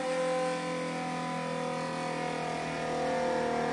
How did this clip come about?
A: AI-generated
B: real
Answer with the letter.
B